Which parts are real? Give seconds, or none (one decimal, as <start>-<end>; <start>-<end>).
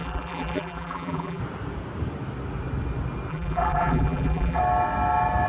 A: 1.4-3.3; 4.6-5.5